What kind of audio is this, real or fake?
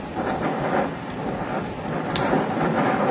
real